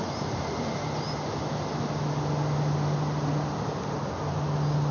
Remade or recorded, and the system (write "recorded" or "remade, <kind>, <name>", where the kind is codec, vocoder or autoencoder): recorded